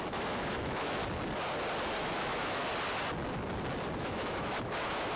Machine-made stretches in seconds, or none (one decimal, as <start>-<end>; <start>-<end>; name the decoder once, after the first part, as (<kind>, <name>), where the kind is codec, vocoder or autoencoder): 0.0-1.0 (autoencoder, DAC-VAE); 2.0-2.6; 4.0-5.2